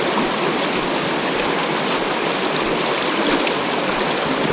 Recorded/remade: recorded